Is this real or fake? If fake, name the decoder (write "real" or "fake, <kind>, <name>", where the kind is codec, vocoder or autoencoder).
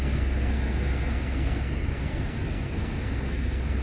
fake, codec, SNAC